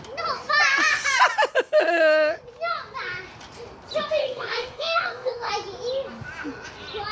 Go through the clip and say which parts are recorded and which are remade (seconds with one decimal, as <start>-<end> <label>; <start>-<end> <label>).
0.0-4.2 recorded; 4.2-5.5 remade; 5.5-7.1 recorded